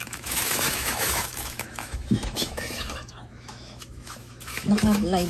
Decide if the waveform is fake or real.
fake